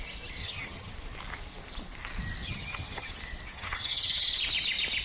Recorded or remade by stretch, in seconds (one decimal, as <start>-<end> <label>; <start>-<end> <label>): 0.0-0.4 recorded; 0.4-0.9 remade; 0.9-2.4 recorded; 2.4-3.1 remade; 3.1-3.5 recorded; 3.5-4.3 remade; 4.3-5.0 recorded